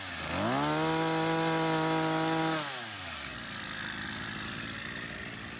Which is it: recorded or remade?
recorded